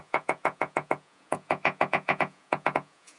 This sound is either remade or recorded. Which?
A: remade